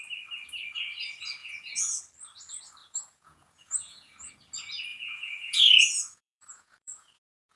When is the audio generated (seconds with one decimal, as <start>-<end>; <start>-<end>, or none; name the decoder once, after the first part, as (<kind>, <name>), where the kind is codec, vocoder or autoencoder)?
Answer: 1.4-2.0 (vocoder, Vocos); 2.8-4.3; 4.9-7.6